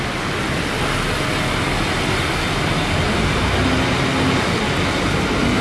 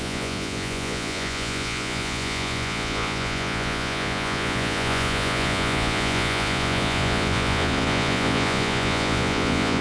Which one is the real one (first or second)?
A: first